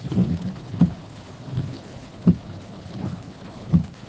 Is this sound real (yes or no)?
no